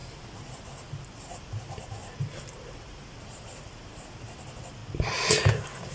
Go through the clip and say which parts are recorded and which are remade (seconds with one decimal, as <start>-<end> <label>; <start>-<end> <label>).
0.0-4.8 remade; 4.8-5.9 recorded